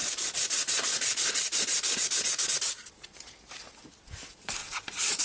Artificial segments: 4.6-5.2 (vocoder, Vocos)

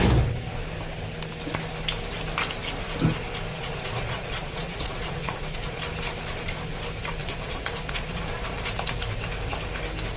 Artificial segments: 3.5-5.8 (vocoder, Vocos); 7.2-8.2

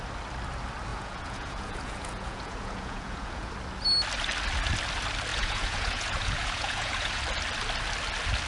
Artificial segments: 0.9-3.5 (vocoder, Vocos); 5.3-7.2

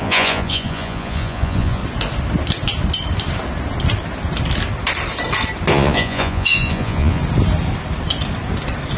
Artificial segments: 0.0-1.8 (vocoder, Vocos); 5.7-7.2

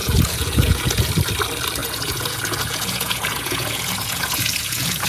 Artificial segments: 0.0-1.1 (vocoder, Vocos); 1.8-5.1

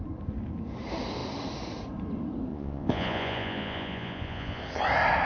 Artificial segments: 2.5-4.6 (vocoder, Vocos)